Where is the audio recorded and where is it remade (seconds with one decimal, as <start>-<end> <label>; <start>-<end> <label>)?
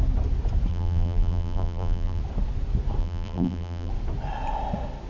0.0-0.7 recorded; 0.7-2.2 remade; 2.2-3.0 recorded; 3.0-3.9 remade; 3.9-5.1 recorded